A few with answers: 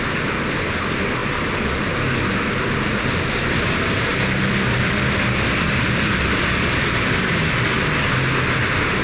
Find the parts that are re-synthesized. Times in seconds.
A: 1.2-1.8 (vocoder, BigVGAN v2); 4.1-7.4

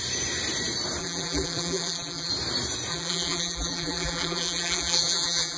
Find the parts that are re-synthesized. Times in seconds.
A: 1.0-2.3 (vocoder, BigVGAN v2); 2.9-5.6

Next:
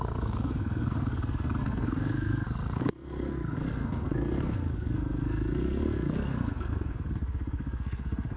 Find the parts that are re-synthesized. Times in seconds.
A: 0.0-8.4 (codec, SNAC)

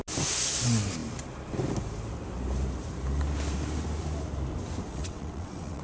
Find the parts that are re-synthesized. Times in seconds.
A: 4.9-5.8 (vocoder, WaveNeXt)

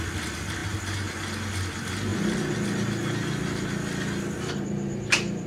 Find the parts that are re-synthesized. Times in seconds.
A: none